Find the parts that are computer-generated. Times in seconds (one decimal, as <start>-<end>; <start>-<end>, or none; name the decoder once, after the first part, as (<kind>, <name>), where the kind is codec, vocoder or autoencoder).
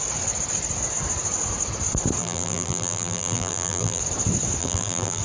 2.2-4.0 (vocoder, BigVGAN v2); 4.6-5.2